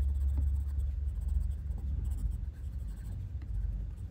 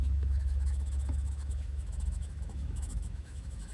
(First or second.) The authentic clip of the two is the first